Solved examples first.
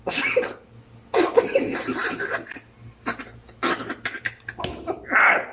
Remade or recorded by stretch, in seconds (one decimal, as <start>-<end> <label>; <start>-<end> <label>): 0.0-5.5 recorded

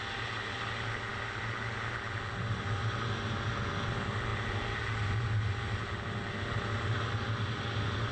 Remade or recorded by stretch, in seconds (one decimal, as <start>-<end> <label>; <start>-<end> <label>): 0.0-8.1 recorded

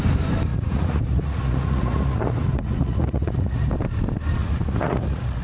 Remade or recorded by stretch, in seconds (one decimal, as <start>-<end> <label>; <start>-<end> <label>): 0.0-0.5 recorded; 0.5-3.7 remade; 3.7-4.4 recorded; 4.4-5.4 remade

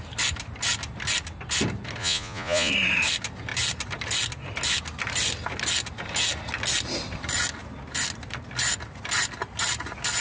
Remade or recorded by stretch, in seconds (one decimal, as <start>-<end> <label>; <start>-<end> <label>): 0.0-2.0 recorded; 2.0-2.7 remade; 2.7-10.2 recorded